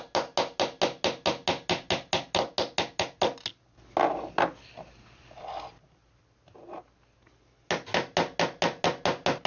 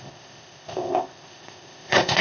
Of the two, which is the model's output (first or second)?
second